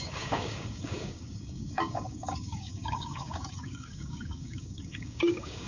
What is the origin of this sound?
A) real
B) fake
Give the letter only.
B